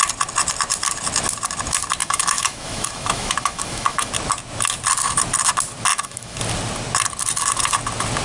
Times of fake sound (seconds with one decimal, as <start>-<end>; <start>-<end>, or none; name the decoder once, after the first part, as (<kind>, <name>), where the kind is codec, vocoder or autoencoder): 2.0-4.1 (autoencoder, DAC-VAE); 5.9-6.4